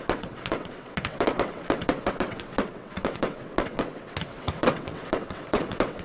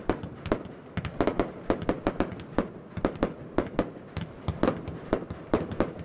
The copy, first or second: first